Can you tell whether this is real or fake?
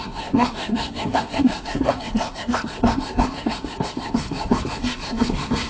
fake